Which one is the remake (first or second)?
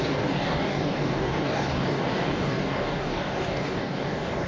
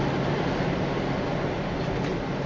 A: first